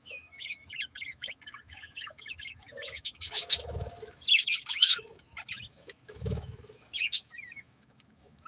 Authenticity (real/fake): fake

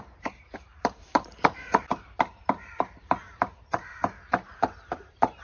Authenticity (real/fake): fake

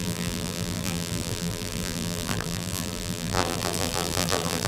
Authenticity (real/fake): fake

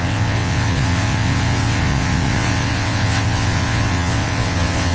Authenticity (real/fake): fake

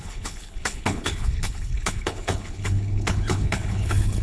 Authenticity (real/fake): fake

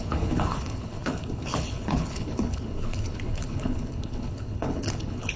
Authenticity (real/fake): fake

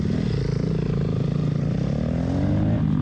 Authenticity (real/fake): real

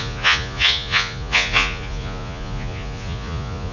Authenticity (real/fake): fake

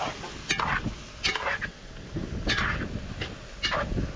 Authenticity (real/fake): real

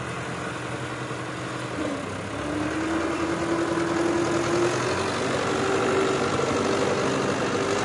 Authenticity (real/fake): real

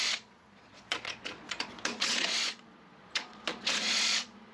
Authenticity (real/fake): fake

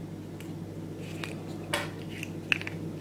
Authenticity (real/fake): real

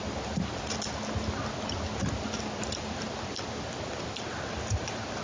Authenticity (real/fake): real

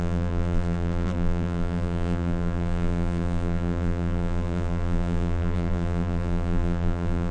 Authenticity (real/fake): fake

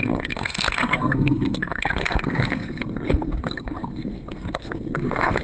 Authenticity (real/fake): fake